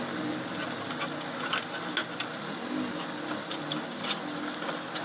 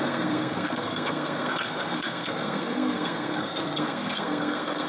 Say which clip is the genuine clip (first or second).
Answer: first